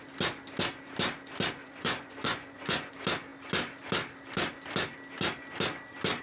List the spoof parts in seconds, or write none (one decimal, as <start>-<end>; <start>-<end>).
1.6-2.9